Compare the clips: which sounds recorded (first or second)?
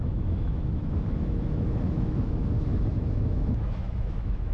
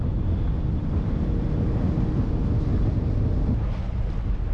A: second